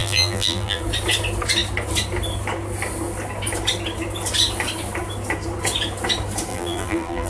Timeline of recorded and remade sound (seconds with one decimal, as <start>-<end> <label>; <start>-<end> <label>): 0.0-0.8 remade; 0.8-6.5 recorded; 6.5-7.3 remade